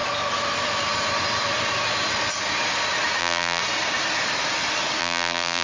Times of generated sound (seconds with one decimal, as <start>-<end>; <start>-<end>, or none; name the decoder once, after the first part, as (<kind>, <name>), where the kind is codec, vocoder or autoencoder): 3.2-3.6 (vocoder, BigVGAN v2); 5.0-5.6